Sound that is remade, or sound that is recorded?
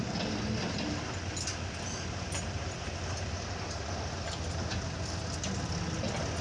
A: recorded